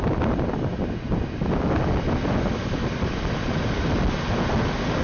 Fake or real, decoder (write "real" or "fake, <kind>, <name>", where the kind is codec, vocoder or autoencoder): real